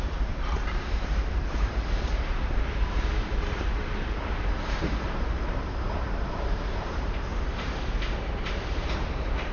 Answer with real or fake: fake